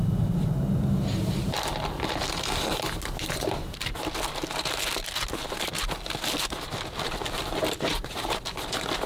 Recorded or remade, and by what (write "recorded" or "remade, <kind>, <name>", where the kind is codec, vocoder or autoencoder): recorded